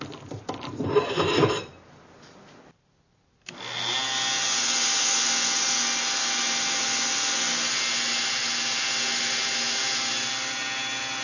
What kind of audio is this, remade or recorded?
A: recorded